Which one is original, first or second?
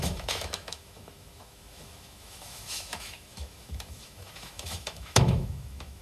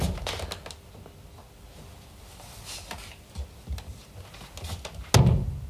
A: second